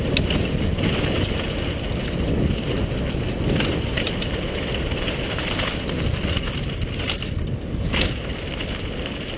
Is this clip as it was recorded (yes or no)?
yes